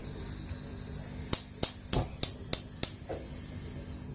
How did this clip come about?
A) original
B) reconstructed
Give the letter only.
A